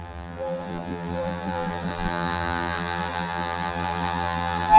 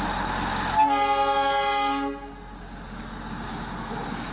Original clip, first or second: second